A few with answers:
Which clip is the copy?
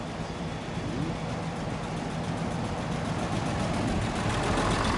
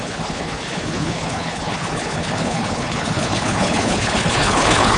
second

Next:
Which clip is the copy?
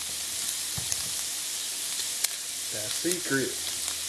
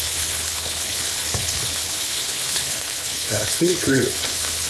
second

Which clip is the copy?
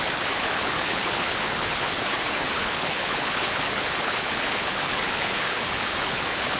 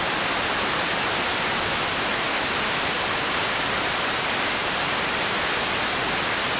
first